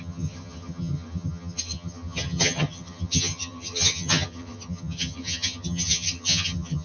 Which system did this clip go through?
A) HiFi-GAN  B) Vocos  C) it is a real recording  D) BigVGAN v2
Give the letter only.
A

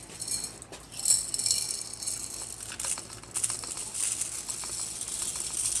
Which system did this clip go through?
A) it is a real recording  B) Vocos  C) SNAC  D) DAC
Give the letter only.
A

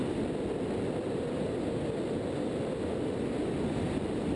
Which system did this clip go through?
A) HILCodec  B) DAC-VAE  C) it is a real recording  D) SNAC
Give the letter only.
C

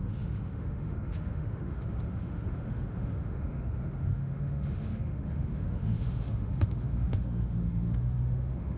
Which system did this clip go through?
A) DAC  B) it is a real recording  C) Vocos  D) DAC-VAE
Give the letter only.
D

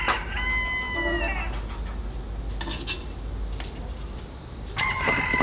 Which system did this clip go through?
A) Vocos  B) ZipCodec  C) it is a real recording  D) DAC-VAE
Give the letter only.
C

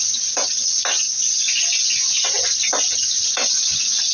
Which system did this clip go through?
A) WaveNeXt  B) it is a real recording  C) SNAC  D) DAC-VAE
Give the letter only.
B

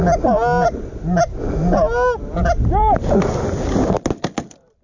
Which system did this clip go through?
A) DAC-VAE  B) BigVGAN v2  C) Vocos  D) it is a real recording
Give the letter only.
D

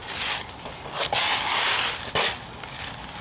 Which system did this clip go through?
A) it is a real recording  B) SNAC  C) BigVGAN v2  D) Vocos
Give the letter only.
A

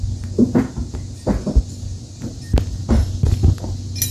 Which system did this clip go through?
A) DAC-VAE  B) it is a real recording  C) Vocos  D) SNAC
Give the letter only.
B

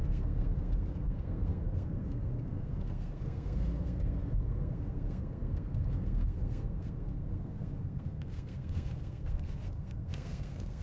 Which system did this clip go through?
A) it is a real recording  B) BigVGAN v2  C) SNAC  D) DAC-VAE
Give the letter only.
C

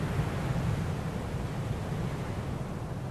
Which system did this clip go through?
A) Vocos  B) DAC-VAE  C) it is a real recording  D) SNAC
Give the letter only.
C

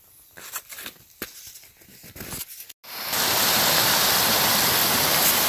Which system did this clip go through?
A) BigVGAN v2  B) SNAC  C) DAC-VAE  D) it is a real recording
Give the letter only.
D